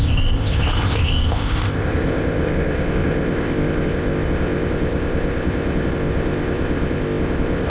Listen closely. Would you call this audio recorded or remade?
remade